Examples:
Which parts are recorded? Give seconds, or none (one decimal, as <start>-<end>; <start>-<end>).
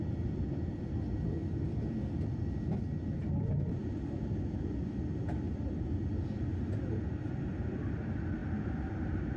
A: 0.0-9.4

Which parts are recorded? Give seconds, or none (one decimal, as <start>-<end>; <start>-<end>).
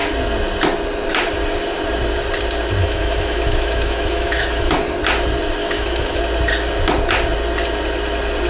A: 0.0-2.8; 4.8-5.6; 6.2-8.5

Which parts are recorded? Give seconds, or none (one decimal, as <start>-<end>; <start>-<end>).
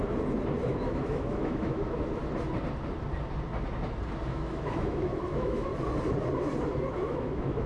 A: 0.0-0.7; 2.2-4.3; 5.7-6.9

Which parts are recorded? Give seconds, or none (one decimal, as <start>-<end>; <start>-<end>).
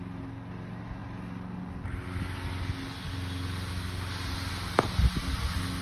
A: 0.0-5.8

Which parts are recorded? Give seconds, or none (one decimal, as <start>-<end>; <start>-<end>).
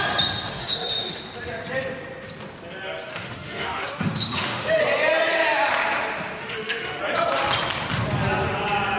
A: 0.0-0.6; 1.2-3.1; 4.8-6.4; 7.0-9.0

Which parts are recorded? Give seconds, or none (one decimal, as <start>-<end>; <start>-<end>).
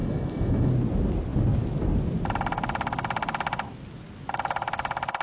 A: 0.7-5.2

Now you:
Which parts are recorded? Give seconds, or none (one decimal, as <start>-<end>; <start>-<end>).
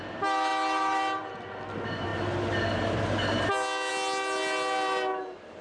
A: 0.0-5.6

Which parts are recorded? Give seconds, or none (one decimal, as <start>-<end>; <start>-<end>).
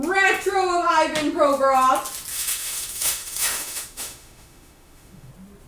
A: 0.0-2.3; 5.3-5.7